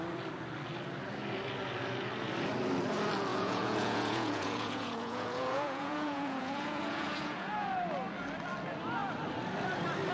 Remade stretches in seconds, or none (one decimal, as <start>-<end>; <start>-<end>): 3.3-7.5